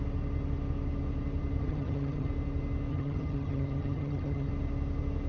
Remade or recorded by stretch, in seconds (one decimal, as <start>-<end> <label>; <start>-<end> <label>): 0.0-1.6 recorded; 1.6-2.3 remade; 2.3-2.9 recorded; 2.9-4.5 remade; 4.5-5.3 recorded